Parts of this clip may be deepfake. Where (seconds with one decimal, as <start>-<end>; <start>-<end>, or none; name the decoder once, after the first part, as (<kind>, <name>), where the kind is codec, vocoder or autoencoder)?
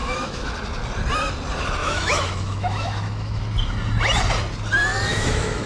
0.0-0.5 (autoencoder, DAC-VAE); 1.8-3.4; 5.1-5.7